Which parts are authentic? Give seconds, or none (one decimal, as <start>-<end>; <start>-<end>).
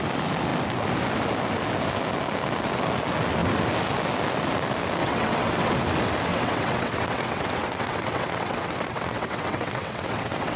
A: 0.0-5.0; 5.7-6.3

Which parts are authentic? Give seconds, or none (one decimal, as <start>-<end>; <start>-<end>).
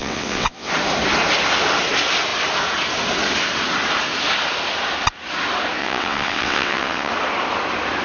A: 0.7-5.8; 7.1-8.0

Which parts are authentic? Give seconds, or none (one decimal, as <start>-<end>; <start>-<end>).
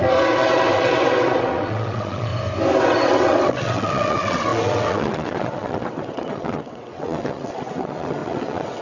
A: 2.3-2.8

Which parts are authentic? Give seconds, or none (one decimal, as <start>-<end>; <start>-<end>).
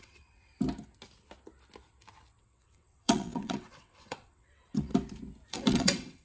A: 0.5-2.4; 4.9-5.5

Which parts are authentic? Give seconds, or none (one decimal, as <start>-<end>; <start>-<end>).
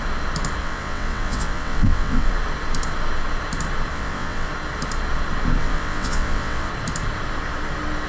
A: 0.0-0.6; 2.3-3.9; 4.5-5.6; 6.7-8.1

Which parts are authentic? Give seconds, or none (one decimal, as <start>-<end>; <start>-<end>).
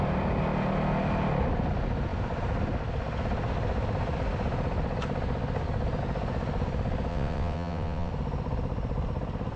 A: 0.0-7.1; 8.1-9.6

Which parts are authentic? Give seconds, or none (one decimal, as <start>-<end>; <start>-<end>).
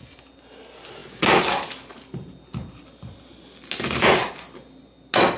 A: 0.0-5.4